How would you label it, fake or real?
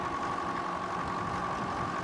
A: real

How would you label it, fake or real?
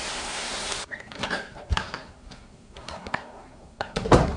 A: fake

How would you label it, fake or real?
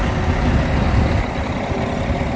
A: real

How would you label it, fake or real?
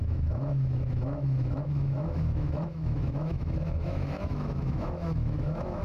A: fake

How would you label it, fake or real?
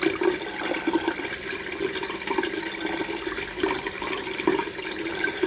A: real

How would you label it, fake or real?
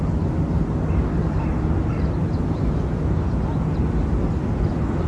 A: real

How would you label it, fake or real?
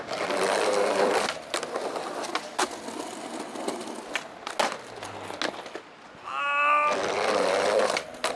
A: real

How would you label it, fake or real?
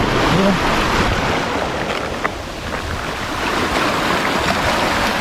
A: real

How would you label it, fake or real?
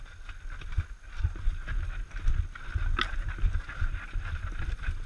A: real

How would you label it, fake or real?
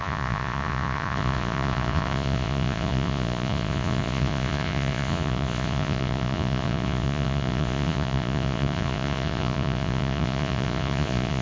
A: fake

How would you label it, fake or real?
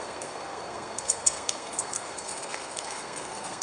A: fake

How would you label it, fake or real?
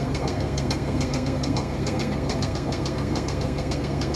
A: fake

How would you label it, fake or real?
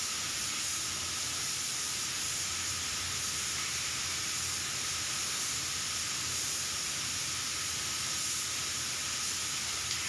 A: real